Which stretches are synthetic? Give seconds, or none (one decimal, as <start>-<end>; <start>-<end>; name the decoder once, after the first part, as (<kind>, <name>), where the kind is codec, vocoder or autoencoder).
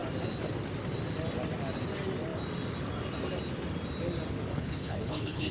4.5-5.5 (codec, HILCodec)